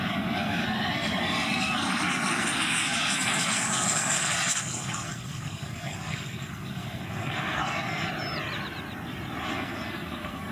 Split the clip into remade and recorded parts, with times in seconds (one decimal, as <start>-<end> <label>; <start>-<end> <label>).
0.0-8.1 remade; 8.1-9.5 recorded; 9.5-10.5 remade